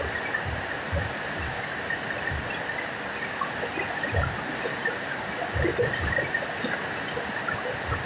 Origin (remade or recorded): recorded